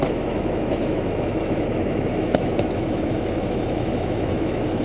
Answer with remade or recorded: remade